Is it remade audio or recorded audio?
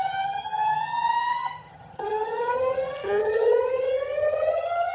remade